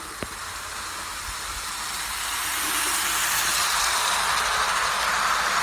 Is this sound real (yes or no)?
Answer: yes